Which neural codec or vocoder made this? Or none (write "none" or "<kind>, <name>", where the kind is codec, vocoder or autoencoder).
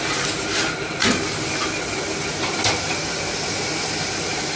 none